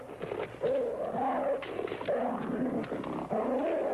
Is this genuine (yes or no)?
yes